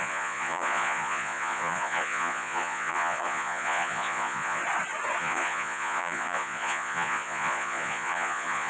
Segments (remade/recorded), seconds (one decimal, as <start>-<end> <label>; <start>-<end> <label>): 0.0-4.6 remade; 4.6-5.2 recorded; 5.2-8.7 remade